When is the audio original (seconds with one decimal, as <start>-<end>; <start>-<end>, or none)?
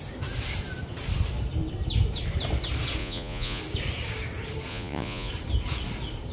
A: 0.0-3.0; 3.6-4.7; 5.3-6.3